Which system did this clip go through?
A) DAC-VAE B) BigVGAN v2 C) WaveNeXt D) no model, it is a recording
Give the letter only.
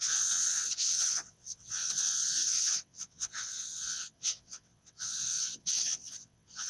C